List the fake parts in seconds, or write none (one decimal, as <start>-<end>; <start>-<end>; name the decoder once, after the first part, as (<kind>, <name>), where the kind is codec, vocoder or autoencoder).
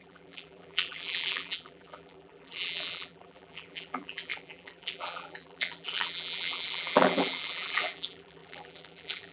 0.0-9.3 (vocoder, BigVGAN v2)